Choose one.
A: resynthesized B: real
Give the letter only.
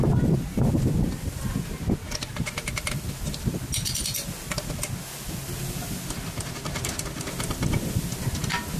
B